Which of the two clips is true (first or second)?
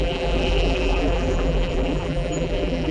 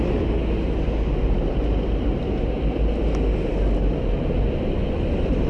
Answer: second